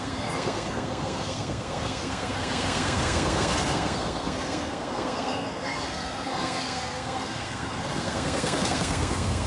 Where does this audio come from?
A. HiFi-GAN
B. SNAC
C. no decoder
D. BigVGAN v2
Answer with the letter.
B